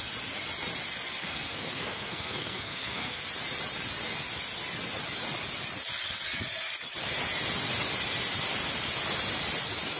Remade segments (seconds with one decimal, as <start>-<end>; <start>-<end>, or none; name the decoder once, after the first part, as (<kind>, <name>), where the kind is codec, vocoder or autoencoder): 1.2-3.2 (codec, SNAC)